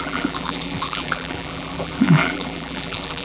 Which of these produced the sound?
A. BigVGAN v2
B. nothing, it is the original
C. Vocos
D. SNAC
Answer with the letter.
A